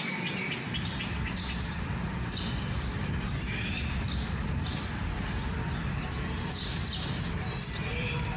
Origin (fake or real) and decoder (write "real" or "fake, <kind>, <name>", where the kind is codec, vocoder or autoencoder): real